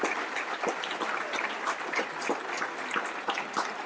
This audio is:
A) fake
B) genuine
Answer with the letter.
B